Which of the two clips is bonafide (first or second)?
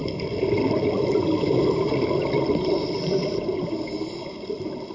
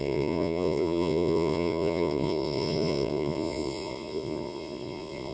first